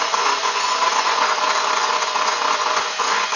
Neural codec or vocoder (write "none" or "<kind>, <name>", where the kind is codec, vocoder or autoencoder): vocoder, Vocos